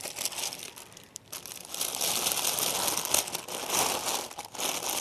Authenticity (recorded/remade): recorded